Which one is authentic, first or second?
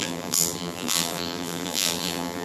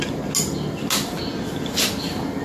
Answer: second